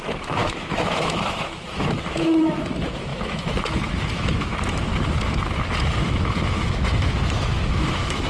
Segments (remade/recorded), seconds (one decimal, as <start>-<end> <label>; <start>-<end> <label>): 0.0-4.9 remade; 4.9-6.0 recorded; 6.0-8.3 remade

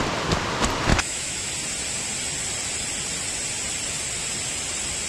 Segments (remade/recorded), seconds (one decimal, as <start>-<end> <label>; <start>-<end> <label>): 0.0-0.9 recorded; 0.9-1.5 remade; 1.5-5.1 recorded

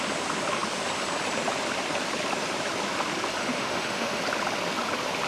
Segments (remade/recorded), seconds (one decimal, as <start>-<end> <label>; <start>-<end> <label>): 0.0-3.4 recorded; 3.4-4.2 remade; 4.2-5.3 recorded

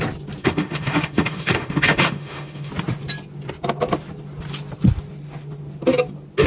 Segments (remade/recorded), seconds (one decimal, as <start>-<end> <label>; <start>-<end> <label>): 0.0-0.4 recorded; 0.4-2.7 remade; 2.7-6.5 recorded

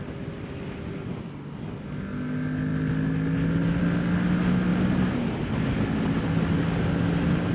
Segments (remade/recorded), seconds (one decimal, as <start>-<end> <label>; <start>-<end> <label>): 0.0-7.5 recorded